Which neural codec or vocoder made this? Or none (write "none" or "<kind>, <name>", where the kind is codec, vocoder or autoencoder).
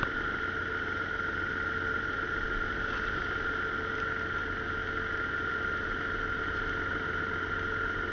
none